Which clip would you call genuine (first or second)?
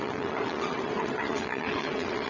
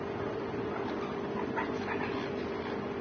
second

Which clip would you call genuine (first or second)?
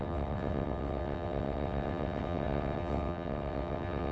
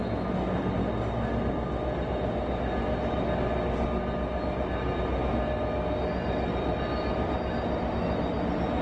second